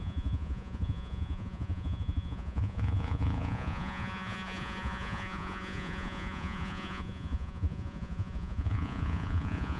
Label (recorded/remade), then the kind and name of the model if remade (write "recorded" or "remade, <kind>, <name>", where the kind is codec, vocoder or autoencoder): remade, vocoder, Vocos